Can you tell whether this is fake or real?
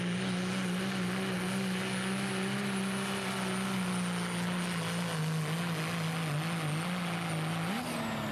real